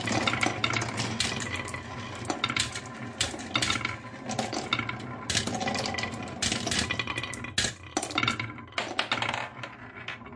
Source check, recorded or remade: recorded